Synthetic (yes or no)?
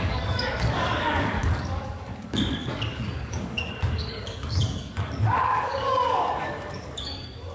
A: yes